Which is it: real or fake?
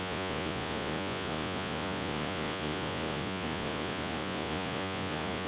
fake